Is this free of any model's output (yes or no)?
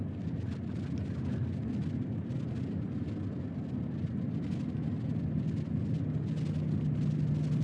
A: yes